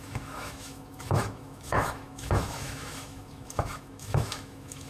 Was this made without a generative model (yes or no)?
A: no